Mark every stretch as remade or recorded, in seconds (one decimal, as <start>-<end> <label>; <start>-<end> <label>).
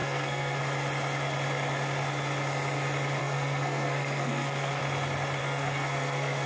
0.0-0.6 remade; 0.6-3.2 recorded; 3.2-4.8 remade; 4.8-5.4 recorded; 5.4-6.5 remade